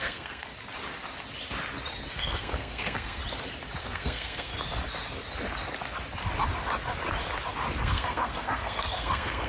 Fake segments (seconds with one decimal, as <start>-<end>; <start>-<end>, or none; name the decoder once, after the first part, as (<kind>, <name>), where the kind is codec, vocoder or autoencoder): 0.0-0.5 (codec, SNAC); 2.1-3.2; 3.8-4.5; 7.8-9.5